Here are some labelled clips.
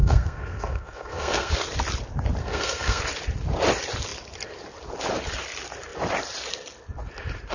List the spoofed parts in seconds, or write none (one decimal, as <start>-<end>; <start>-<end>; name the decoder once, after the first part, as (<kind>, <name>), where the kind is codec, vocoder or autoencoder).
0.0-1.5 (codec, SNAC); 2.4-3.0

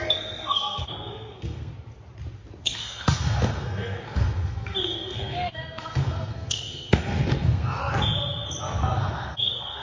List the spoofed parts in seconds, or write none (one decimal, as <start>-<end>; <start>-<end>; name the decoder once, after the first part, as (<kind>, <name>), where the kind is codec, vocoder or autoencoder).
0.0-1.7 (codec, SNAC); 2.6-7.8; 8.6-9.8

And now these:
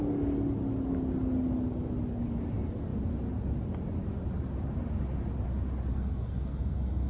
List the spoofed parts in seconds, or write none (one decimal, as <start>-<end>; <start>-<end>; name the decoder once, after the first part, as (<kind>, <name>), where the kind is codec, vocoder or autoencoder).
5.9-7.1 (codec, SNAC)

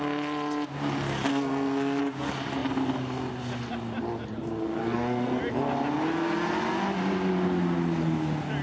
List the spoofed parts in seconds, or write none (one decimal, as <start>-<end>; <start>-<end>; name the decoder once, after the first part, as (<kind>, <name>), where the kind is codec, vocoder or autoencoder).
1.3-2.0 (codec, SNAC); 4.8-5.4

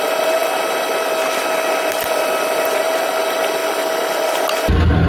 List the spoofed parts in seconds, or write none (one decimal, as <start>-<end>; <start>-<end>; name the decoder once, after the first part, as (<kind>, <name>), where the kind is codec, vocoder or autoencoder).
none